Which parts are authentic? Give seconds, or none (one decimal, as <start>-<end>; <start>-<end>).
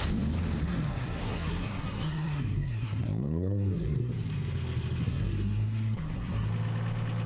0.0-0.6; 4.1-5.0; 6.5-7.3